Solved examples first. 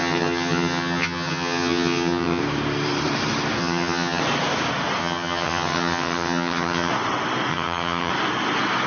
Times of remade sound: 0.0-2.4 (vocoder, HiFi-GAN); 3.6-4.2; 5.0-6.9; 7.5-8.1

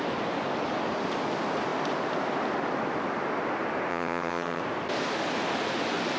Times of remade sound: 3.9-4.6 (vocoder, HiFi-GAN)

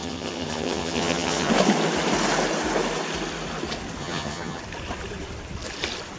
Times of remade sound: 0.0-1.5 (vocoder, HiFi-GAN); 4.0-4.6

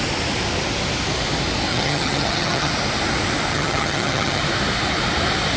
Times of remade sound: 1.7-2.7 (vocoder, HiFi-GAN); 3.5-4.4

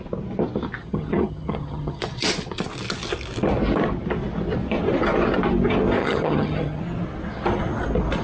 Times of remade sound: 0.8-2.0 (vocoder, HiFi-GAN); 6.0-6.8

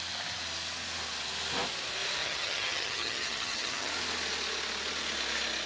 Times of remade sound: 2.2-3.9 (vocoder, HiFi-GAN)

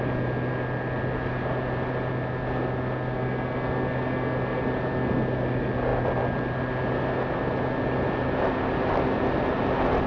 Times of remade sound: none